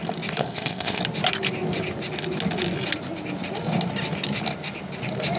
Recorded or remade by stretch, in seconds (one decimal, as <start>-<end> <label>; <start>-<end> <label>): 0.0-0.4 recorded; 0.4-1.0 remade; 1.0-5.4 recorded